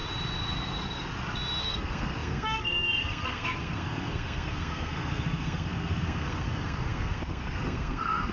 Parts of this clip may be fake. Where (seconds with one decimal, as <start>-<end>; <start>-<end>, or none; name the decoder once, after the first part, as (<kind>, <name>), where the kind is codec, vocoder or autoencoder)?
1.6-8.3 (codec, SNAC)